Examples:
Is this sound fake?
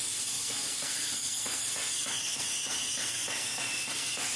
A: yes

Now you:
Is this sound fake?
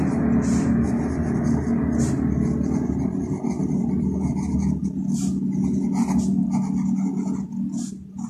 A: no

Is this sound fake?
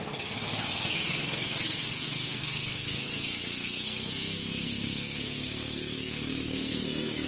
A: yes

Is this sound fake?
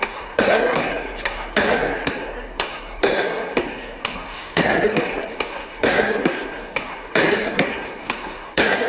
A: yes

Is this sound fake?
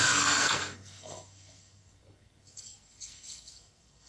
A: yes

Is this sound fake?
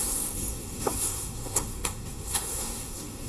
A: yes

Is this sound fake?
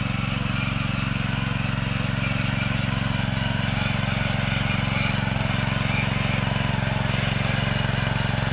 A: no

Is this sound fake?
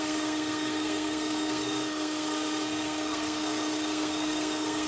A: yes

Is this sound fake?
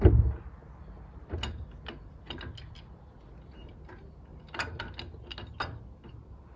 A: no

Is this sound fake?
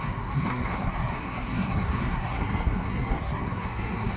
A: yes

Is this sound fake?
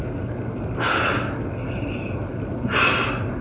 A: no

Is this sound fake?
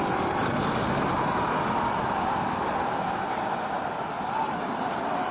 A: no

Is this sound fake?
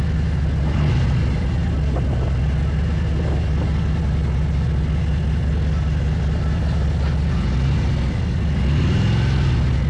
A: no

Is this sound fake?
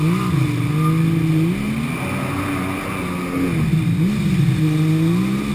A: no